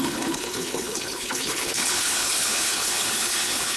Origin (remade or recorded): remade